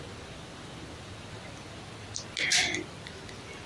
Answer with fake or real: real